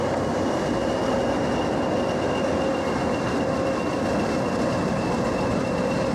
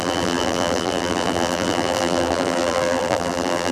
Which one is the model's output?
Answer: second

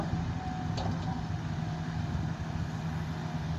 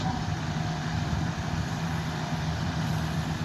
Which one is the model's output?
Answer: second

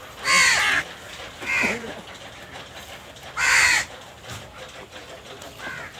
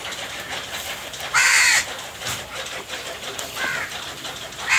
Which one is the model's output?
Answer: second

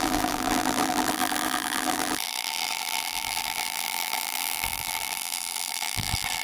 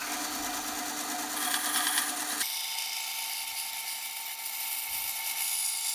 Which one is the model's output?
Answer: first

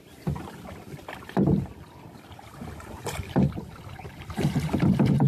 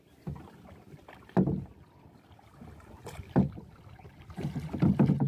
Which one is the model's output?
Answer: first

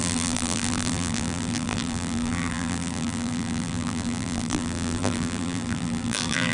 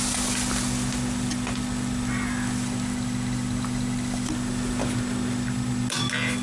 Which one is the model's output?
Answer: first